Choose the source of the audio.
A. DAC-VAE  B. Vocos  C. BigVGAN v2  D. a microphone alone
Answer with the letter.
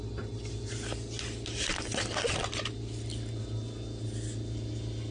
D